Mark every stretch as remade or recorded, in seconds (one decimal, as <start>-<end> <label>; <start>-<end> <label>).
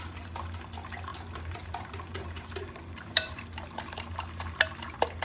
0.0-1.1 recorded; 1.1-3.4 remade; 3.4-5.2 recorded